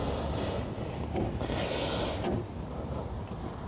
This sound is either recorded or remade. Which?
recorded